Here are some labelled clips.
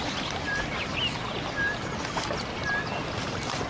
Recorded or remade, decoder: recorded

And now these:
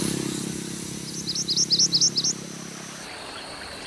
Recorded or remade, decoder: recorded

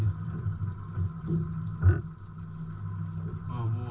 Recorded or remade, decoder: recorded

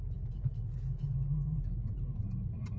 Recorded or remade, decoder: remade, vocoder, BigVGAN v2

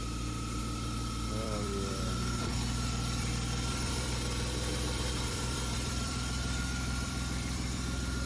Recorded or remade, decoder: remade, vocoder, BigVGAN v2